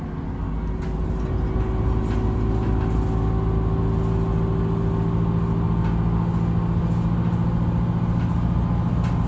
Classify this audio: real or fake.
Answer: real